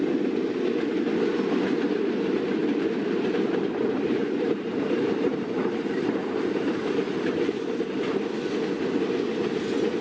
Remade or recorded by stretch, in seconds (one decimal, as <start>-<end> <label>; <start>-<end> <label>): 0.0-2.6 recorded; 2.6-7.8 remade; 7.8-10.0 recorded